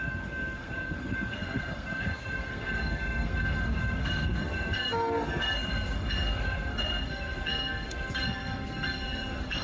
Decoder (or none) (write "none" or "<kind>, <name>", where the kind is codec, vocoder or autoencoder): codec, SNAC